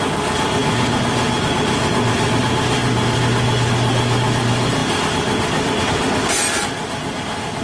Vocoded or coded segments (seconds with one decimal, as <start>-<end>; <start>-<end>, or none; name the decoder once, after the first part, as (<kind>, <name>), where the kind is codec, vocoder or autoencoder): none